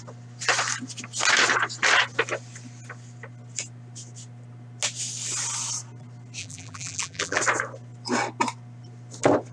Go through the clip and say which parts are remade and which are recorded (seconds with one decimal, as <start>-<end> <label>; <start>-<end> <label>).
0.0-6.4 recorded; 6.4-7.4 remade; 7.4-9.5 recorded